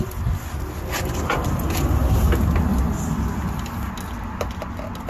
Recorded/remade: recorded